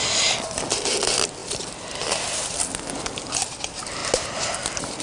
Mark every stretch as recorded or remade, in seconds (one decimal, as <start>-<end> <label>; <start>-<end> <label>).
0.0-1.4 recorded; 1.4-2.9 remade; 2.9-5.0 recorded